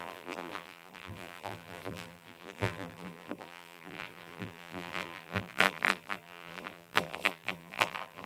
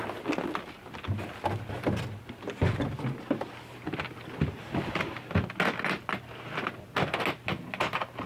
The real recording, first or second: second